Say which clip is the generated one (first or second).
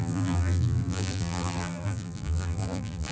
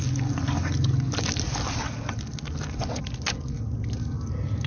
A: first